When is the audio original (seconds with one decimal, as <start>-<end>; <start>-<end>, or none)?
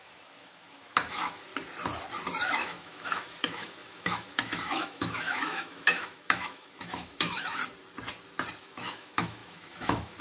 1.5-2.6; 7.6-8.6